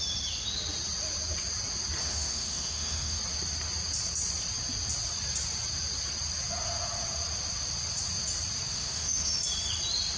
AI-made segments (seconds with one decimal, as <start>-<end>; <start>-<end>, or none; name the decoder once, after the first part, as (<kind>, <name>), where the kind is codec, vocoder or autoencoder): 2.0-3.2 (autoencoder, DAC-VAE); 8.7-9.3